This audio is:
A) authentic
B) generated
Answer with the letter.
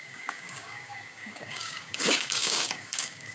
B